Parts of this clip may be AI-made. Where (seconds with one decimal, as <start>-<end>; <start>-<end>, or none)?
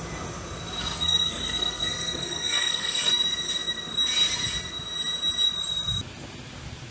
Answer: 0.8-3.1